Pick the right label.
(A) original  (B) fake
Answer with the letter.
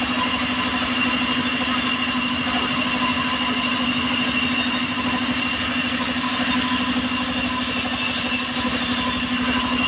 A